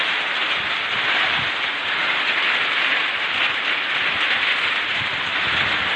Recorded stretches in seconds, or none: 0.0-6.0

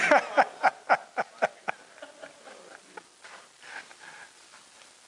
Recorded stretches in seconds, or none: 0.0-5.1

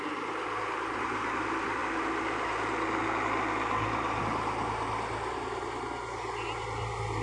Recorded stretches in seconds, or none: 0.0-7.2

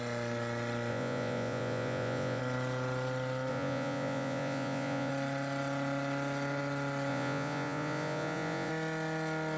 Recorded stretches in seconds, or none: 0.0-0.9; 2.4-3.5; 5.1-7.1; 8.7-9.6

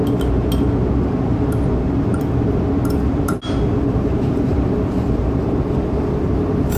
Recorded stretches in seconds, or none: 0.0-3.8